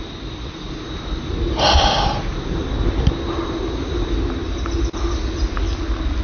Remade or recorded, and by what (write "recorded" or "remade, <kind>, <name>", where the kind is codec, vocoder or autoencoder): recorded